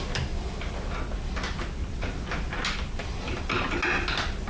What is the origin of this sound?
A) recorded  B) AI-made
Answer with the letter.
A